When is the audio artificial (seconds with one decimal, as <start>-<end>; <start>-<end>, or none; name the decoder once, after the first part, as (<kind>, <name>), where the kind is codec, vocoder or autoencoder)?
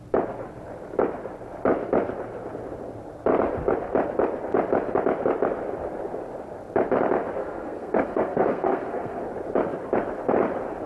7.4-9.2 (codec, SNAC)